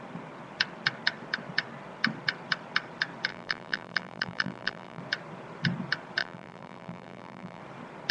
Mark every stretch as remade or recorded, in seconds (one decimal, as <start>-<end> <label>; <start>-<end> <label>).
0.0-3.3 recorded; 3.3-5.0 remade; 5.0-6.2 recorded; 6.2-7.6 remade; 7.6-8.1 recorded